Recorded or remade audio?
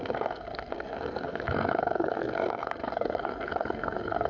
remade